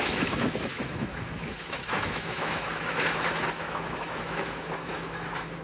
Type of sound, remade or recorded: remade